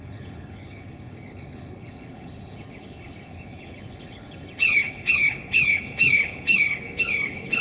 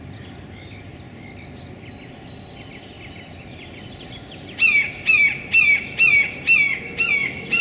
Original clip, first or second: second